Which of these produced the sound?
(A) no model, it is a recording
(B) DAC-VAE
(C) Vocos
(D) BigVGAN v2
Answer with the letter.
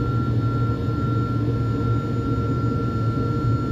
A